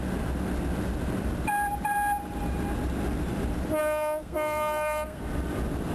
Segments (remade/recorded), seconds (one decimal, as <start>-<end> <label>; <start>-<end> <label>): 0.0-3.8 recorded; 3.8-5.2 remade; 5.2-5.9 recorded